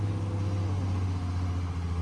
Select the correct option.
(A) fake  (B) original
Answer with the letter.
B